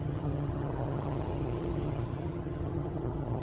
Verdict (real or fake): fake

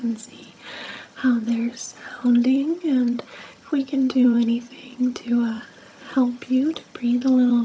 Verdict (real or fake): fake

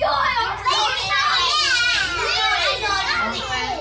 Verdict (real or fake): real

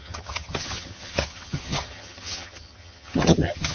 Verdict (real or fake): fake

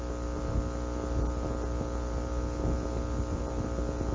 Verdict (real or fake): real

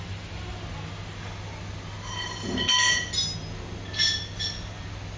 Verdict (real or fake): real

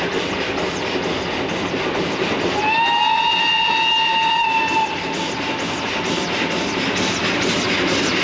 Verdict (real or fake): real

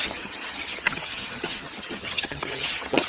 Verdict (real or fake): fake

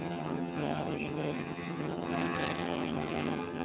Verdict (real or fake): fake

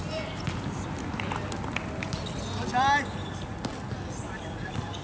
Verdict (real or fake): real